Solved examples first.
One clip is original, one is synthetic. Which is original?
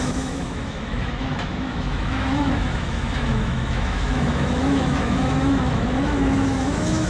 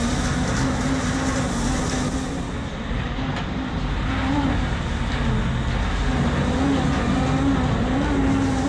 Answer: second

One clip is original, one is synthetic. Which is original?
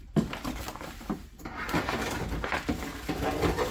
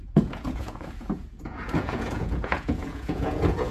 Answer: first